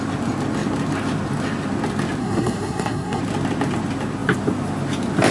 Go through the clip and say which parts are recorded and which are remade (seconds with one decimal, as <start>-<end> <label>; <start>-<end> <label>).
0.0-2.2 recorded; 2.2-3.2 remade; 3.2-5.3 recorded